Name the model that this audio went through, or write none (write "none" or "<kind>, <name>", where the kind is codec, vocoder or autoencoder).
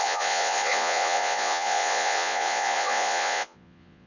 vocoder, Vocos